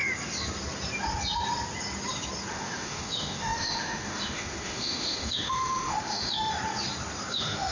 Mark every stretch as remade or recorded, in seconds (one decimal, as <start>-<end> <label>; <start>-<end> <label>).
0.0-2.5 recorded; 2.5-6.5 remade; 6.5-7.3 recorded; 7.3-7.7 remade